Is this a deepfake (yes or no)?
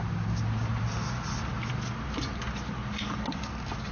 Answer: no